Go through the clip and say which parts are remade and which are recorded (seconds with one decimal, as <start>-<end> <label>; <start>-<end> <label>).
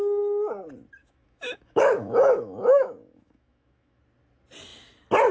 0.0-1.0 recorded; 1.0-4.0 remade; 4.0-5.3 recorded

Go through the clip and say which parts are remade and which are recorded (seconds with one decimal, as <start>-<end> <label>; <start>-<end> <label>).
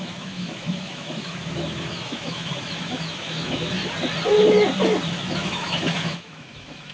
0.0-3.8 remade; 3.8-5.2 recorded; 5.2-6.9 remade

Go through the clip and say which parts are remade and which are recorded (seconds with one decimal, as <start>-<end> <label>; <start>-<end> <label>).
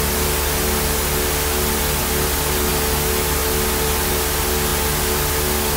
0.0-5.8 recorded